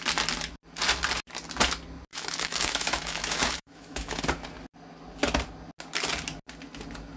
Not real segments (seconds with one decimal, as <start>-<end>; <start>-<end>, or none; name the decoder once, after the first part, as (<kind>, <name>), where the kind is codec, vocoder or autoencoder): 2.1-4.2 (autoencoder, DAC-VAE)